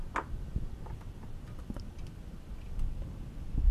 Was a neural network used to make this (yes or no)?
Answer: no